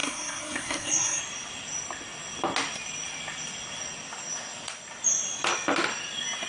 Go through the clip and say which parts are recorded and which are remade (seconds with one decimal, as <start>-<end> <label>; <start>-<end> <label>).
0.0-1.2 remade; 1.2-6.5 recorded